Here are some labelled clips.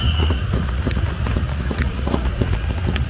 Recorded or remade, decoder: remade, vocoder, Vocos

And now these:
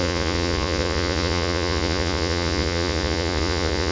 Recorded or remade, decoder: remade, vocoder, Vocos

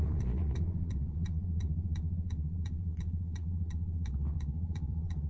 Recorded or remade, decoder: remade, vocoder, Vocos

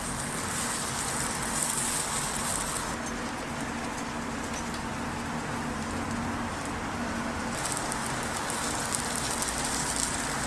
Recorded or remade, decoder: recorded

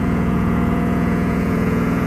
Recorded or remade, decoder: remade, vocoder, Vocos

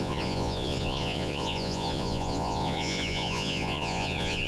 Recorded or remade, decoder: remade, vocoder, Vocos